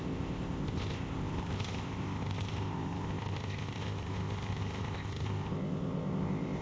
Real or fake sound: fake